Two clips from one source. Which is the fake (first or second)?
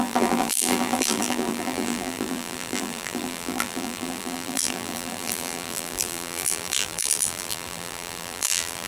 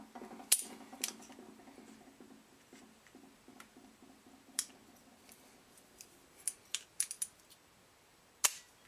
first